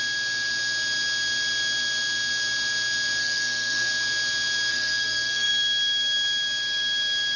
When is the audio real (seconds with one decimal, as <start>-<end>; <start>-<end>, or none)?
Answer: 0.0-3.2; 3.9-4.7; 5.5-7.4